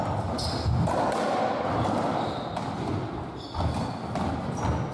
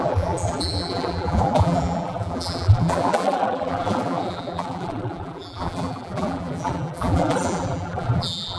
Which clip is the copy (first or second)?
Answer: second